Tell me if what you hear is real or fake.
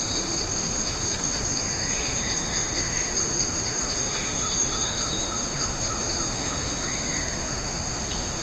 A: fake